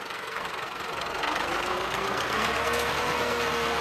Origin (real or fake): fake